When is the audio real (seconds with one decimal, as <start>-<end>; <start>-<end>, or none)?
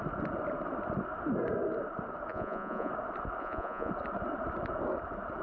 0.0-2.3; 2.9-3.4; 3.9-5.4